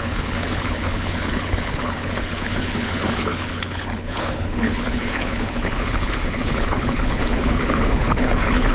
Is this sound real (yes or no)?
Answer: no